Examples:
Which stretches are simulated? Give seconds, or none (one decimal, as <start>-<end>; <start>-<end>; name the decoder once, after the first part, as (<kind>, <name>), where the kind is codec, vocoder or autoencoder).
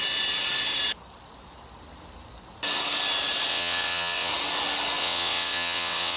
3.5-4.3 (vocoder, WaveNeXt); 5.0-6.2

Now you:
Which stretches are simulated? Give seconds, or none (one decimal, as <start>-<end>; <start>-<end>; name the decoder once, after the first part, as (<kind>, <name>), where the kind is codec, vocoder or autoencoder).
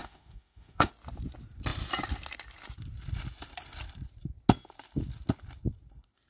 0.0-0.9 (autoencoder, DAC-VAE)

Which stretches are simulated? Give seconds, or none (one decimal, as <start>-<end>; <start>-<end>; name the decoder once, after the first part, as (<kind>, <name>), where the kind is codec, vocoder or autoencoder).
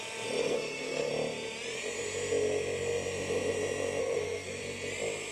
0.4-1.1 (codec, SNAC); 4.0-4.6